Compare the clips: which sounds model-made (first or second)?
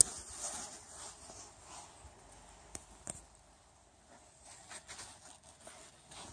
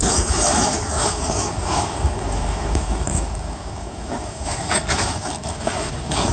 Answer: second